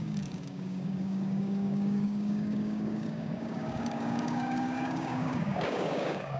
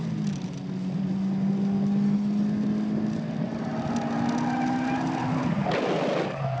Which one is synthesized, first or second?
first